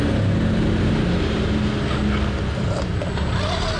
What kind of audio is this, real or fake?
real